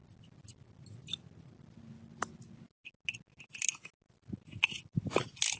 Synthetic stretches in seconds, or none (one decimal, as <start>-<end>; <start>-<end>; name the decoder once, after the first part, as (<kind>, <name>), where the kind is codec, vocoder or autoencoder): none